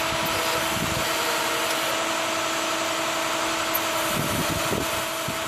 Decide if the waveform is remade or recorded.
recorded